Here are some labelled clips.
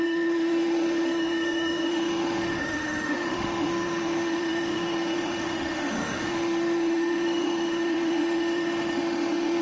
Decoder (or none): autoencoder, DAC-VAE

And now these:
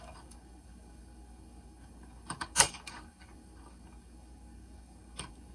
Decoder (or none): codec, DAC